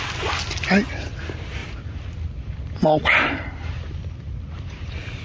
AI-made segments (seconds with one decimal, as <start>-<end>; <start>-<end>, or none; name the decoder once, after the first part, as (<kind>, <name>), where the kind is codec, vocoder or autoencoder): none